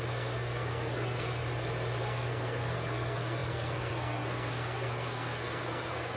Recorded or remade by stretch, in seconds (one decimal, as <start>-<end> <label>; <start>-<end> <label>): 0.0-1.4 remade; 1.4-2.0 recorded; 2.0-6.2 remade